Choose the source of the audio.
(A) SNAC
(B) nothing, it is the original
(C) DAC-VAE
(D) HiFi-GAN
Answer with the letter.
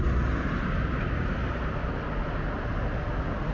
B